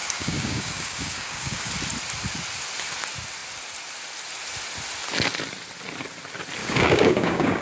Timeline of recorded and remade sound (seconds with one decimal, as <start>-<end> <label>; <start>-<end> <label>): 0.0-1.7 remade; 1.7-6.6 recorded; 6.6-7.6 remade